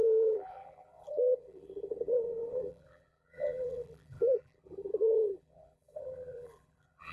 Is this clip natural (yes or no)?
no